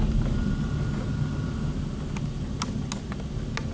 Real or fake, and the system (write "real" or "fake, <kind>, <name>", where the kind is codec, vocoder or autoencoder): real